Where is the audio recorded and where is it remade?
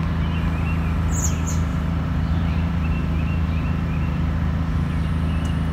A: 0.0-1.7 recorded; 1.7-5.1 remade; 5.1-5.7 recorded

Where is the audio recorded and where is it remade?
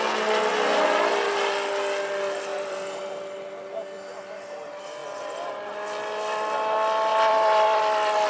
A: 0.0-2.5 recorded; 2.5-3.0 remade; 3.0-7.1 recorded; 7.1-7.8 remade; 7.8-8.3 recorded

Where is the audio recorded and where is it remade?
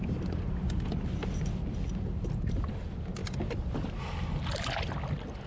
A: 0.0-5.5 recorded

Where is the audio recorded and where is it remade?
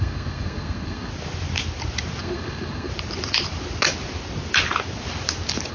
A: 0.0-1.1 remade; 1.1-2.2 recorded; 2.2-2.9 remade; 2.9-5.7 recorded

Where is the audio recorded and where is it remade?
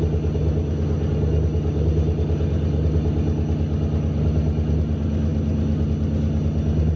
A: 0.0-7.0 recorded